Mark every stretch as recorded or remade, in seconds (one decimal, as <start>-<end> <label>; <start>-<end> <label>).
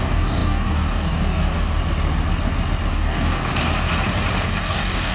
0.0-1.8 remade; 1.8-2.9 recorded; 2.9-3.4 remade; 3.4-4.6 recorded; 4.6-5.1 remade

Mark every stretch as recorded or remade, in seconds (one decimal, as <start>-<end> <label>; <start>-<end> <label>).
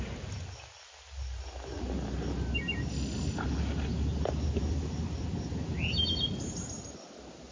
0.0-7.5 recorded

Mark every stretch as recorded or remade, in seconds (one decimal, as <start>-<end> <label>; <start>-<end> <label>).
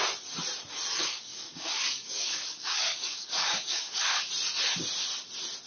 0.0-0.9 recorded; 0.9-4.3 remade; 4.3-5.7 recorded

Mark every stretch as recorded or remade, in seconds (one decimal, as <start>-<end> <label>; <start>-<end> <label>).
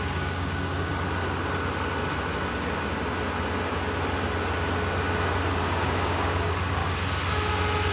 0.0-0.9 remade; 0.9-5.6 recorded; 5.6-6.8 remade; 6.8-7.9 recorded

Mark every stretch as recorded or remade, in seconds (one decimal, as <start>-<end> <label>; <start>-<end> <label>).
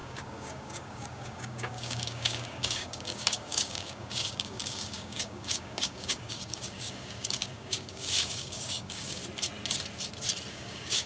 0.0-9.2 remade; 9.2-10.5 recorded; 10.5-11.1 remade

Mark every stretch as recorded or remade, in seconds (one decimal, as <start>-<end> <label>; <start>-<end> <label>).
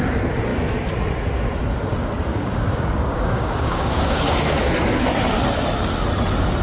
0.0-2.3 recorded; 2.3-4.2 remade; 4.2-6.6 recorded